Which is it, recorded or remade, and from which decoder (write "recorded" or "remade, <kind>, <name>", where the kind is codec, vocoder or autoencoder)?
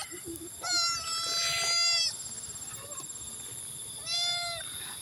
recorded